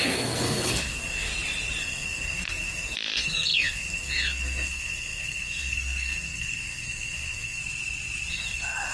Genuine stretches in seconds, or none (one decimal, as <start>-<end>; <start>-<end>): 1.3-1.8; 7.6-8.3